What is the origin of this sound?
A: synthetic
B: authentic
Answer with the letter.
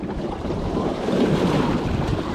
A